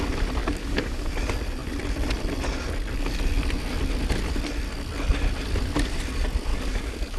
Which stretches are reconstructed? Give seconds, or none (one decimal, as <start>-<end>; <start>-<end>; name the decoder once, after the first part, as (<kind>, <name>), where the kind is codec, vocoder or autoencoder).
0.4-1.1 (codec, DAC); 6.5-7.2